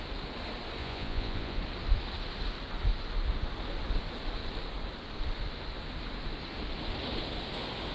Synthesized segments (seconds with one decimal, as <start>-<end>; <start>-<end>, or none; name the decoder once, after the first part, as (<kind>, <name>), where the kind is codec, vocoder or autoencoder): 0.8-1.6 (vocoder, Vocos)